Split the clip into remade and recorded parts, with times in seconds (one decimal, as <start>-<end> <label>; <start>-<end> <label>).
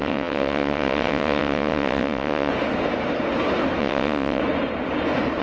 0.0-2.5 remade; 2.5-3.8 recorded; 3.8-4.4 remade; 4.4-5.4 recorded